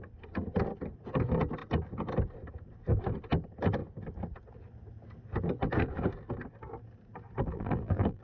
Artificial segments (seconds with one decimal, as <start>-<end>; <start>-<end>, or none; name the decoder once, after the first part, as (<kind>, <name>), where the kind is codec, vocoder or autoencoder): 7.4-8.2 (vocoder, BigVGAN v2)